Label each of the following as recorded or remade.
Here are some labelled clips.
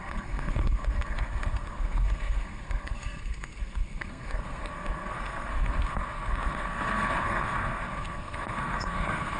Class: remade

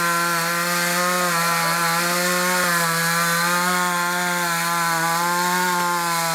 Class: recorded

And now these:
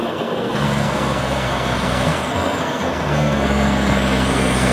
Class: remade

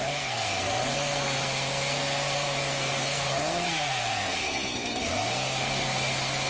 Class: remade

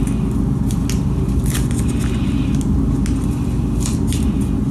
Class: recorded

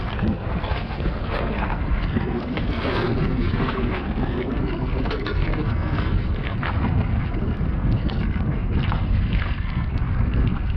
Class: remade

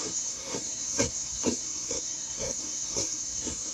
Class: remade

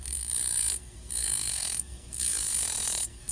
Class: remade